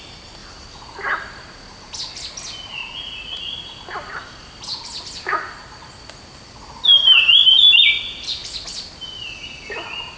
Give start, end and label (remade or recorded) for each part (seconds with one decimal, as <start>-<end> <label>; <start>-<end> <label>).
0.0-2.8 recorded; 2.8-3.5 remade; 3.5-10.2 recorded